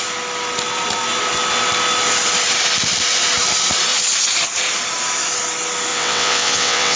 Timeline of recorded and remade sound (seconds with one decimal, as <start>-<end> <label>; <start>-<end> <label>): 0.0-5.9 recorded; 5.9-7.0 remade